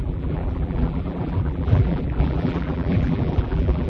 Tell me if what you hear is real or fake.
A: fake